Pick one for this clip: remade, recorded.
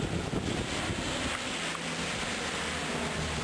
recorded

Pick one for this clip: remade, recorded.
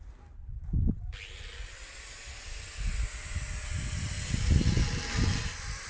recorded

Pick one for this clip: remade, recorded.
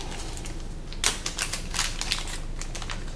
recorded